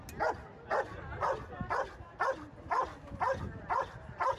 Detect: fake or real real